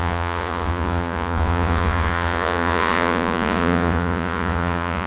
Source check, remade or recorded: remade